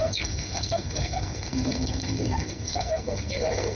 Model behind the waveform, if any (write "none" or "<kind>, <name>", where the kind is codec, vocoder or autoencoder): codec, SNAC